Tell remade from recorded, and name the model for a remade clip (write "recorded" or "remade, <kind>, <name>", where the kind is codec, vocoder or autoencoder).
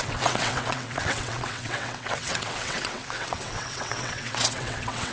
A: remade, vocoder, WaveNeXt